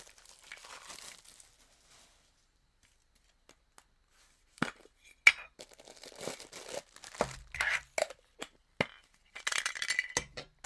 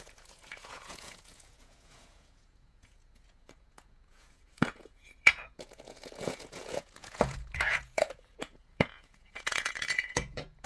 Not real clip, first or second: second